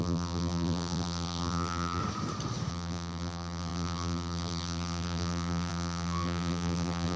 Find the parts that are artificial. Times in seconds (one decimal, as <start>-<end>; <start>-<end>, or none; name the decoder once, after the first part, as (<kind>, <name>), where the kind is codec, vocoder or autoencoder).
0.0-2.0 (vocoder, BigVGAN v2); 2.7-7.2